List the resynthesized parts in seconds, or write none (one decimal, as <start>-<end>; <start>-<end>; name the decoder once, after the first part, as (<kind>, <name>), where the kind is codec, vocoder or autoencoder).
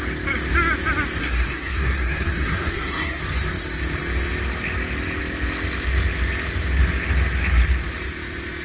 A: 1.2-3.2 (codec, SNAC)